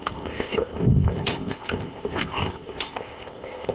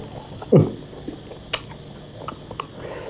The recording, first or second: second